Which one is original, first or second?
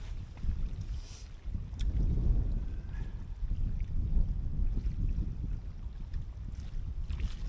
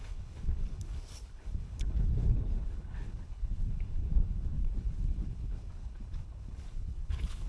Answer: first